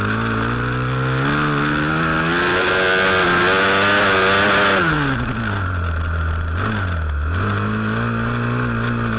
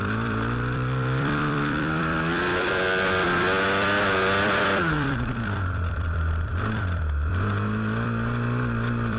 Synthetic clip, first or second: second